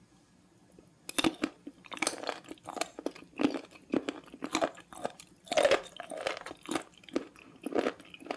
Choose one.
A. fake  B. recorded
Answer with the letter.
B